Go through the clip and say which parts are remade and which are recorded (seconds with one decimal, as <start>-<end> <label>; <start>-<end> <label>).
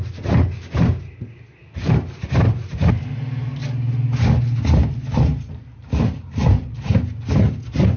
0.0-1.6 recorded; 1.6-2.9 remade; 2.9-5.3 recorded; 5.3-7.0 remade; 7.0-8.0 recorded